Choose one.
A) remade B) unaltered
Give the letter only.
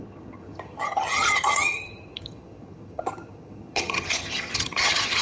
A